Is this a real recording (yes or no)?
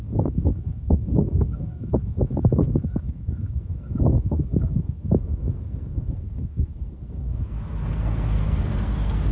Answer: no